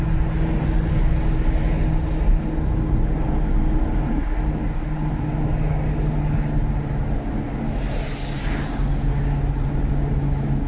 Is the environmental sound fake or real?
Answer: real